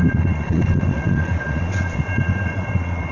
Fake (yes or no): yes